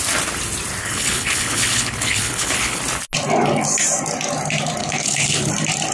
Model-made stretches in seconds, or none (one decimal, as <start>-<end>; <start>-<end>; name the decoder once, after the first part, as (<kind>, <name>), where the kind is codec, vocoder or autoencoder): 0.8-2.8 (codec, HILCodec); 4.8-5.5